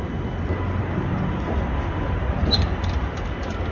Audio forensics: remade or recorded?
recorded